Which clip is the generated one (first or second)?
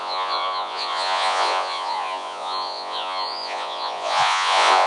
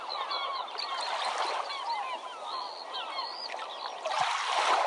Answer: first